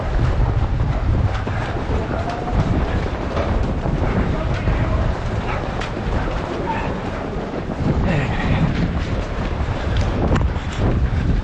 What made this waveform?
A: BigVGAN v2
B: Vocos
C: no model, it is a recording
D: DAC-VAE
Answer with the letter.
A